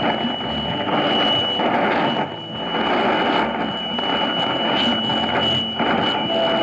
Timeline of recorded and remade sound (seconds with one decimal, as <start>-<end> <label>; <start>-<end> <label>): 0.0-6.6 recorded